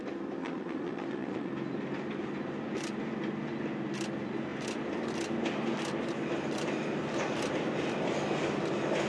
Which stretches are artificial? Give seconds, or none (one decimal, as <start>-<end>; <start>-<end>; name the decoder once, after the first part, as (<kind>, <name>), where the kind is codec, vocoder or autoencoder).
0.4-1.5 (vocoder, Vocos)